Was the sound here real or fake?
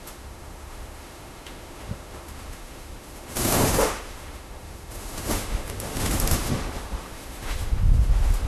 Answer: fake